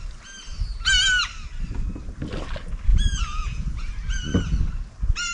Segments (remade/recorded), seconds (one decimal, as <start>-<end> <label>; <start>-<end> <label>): 0.0-2.9 recorded; 2.9-3.9 remade; 3.9-5.3 recorded